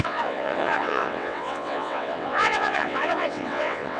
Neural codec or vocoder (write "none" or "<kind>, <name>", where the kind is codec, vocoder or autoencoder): vocoder, WaveNeXt